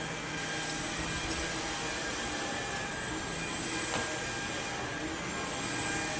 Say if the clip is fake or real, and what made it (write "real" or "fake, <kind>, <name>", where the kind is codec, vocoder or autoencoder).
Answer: real